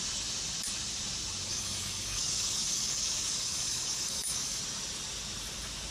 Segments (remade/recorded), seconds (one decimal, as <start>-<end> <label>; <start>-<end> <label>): 0.0-1.5 recorded; 1.5-4.6 remade; 4.6-5.9 recorded

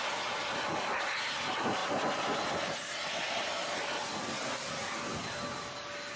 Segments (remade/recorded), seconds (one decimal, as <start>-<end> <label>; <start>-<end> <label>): 0.0-6.2 recorded

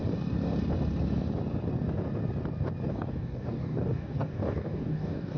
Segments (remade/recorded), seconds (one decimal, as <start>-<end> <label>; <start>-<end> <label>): 0.0-2.9 recorded; 2.9-5.4 remade

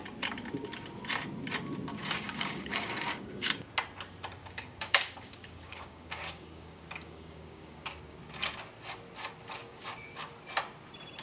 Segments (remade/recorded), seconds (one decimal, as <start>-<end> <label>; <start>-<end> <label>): 0.0-1.9 recorded; 1.9-3.7 remade; 3.7-4.4 recorded; 4.4-8.0 remade; 8.0-9.6 recorded; 9.6-10.3 remade; 10.3-11.2 recorded

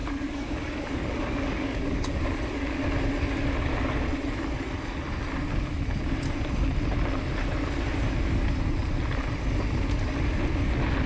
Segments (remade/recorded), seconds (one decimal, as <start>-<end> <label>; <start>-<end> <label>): 0.0-2.2 remade; 2.2-11.1 recorded

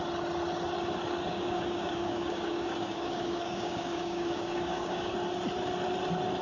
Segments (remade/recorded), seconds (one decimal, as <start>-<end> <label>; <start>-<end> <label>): 0.0-1.3 recorded; 1.3-5.1 remade; 5.1-6.4 recorded

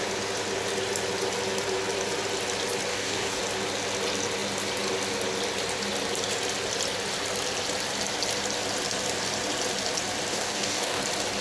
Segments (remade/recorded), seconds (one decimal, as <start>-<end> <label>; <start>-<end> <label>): 0.0-2.9 recorded; 2.9-3.4 remade; 3.4-10.3 recorded; 10.3-11.0 remade; 11.0-11.4 recorded

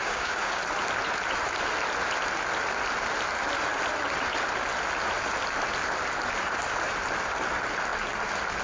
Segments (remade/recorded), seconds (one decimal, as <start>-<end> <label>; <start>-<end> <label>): 0.0-0.6 remade; 0.6-8.6 recorded